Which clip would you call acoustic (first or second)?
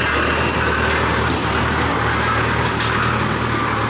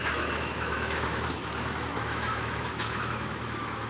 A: first